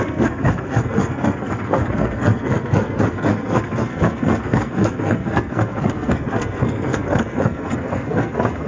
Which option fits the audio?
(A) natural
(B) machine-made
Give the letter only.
B